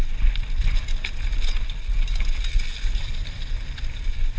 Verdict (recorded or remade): recorded